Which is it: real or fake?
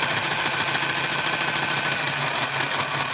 real